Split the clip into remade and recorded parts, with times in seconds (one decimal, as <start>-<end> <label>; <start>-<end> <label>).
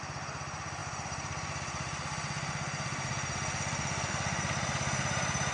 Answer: 0.0-5.5 recorded